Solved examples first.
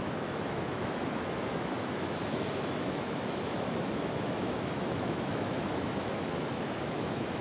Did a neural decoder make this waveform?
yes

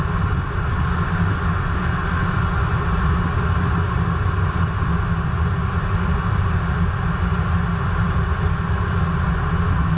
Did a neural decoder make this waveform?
no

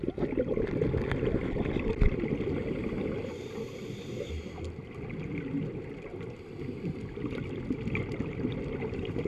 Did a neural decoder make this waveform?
no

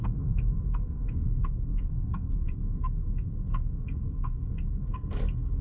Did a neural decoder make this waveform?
yes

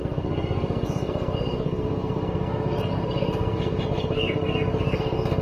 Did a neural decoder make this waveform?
yes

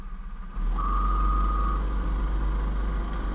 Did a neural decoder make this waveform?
no